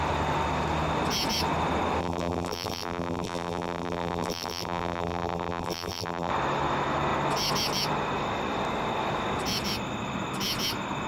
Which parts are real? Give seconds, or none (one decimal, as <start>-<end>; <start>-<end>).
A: 0.0-2.0; 6.3-11.1